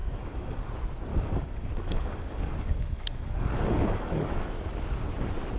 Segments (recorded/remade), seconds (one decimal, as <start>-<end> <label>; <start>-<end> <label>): 0.0-0.7 remade; 0.7-1.1 recorded; 1.1-4.5 remade; 4.5-5.6 recorded